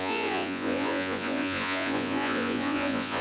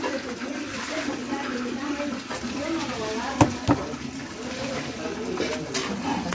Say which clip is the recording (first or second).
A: second